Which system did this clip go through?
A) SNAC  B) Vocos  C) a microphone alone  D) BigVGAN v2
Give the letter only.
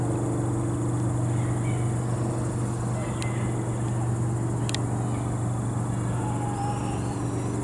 C